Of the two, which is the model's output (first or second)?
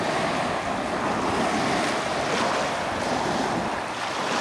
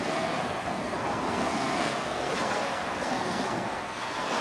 second